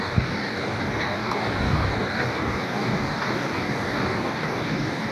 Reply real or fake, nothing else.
fake